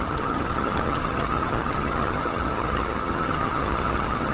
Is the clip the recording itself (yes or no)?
no